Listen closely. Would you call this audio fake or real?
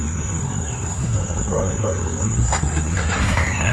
fake